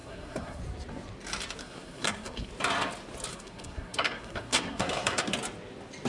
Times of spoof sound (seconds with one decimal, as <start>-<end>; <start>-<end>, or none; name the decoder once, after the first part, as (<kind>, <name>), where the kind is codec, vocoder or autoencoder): 0.0-0.6 (codec, SNAC); 1.6-2.5; 3.3-5.3